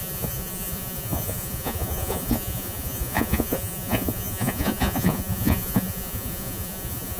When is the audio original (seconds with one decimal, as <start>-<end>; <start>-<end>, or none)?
none